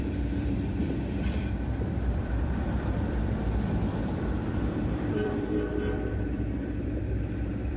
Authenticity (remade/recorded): remade